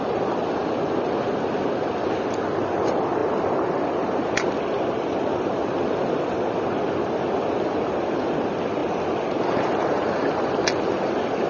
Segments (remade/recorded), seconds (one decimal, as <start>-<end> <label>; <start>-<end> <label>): 0.0-11.5 recorded